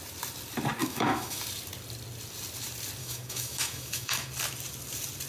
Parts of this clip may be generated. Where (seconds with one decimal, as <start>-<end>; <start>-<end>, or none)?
0.8-1.4; 3.0-4.3